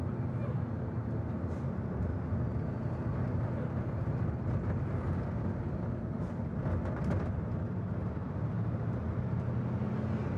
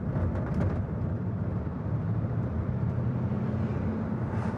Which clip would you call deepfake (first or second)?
second